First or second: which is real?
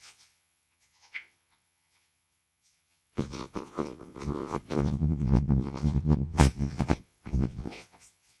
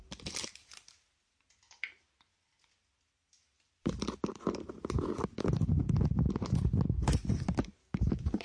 second